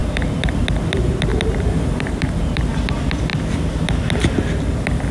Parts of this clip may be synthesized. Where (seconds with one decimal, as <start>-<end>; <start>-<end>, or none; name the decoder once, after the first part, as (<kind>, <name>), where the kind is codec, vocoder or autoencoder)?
0.0-0.6 (vocoder, BigVGAN v2); 1.3-2.7